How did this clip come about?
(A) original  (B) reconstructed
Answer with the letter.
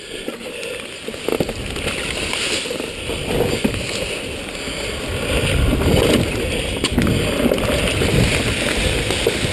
A